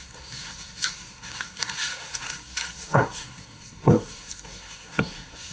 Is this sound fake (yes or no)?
yes